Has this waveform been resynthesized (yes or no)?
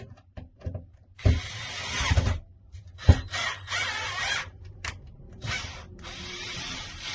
yes